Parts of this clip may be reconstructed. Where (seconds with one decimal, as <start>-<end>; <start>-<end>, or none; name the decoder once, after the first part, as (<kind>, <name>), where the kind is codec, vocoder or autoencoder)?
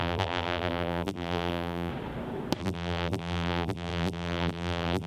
0.0-1.9 (vocoder, BigVGAN v2); 2.6-5.1